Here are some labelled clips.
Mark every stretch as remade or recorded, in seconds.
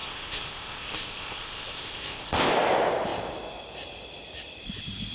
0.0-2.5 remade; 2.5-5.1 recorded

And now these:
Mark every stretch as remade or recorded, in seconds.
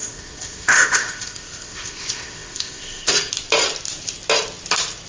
0.0-3.1 remade; 3.1-5.1 recorded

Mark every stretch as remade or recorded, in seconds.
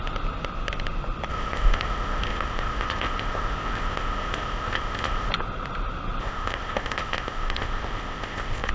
0.0-1.3 recorded; 1.3-5.3 remade; 5.3-6.2 recorded; 6.2-8.7 remade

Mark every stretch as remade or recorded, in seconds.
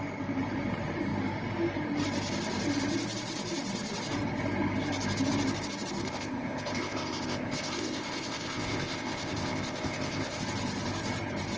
0.0-6.0 recorded; 6.0-10.4 remade; 10.4-11.6 recorded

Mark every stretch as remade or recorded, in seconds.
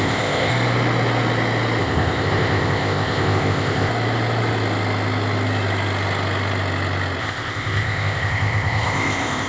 0.0-0.5 remade; 0.5-1.8 recorded; 1.8-3.9 remade; 3.9-7.2 recorded; 7.2-9.5 remade